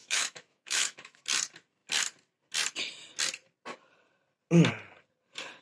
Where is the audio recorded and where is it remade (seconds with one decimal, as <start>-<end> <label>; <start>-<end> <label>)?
0.0-1.2 remade; 1.2-5.6 recorded